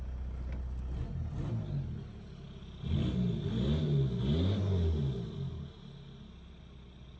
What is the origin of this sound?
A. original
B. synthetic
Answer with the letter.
A